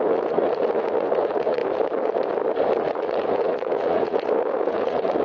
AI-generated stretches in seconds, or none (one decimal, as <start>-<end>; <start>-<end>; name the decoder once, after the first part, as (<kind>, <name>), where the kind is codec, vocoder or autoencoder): 0.0-1.6 (vocoder, Vocos); 2.8-5.2